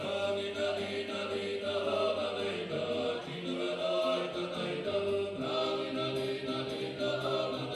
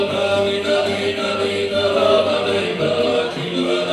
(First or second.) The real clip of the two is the first